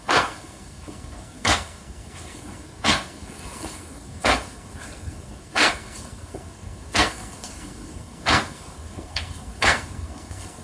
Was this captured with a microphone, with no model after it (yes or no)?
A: no